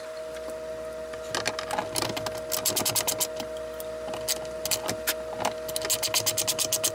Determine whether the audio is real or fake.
real